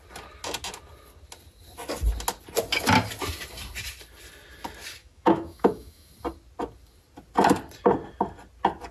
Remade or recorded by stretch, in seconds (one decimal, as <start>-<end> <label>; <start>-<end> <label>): 0.0-5.0 recorded; 5.0-6.1 remade; 6.1-8.9 recorded